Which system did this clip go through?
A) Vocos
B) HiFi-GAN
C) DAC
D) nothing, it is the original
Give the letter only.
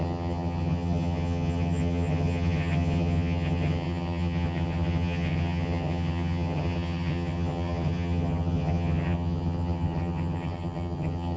B